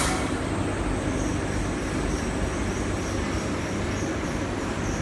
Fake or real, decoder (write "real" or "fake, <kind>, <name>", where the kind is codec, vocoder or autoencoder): real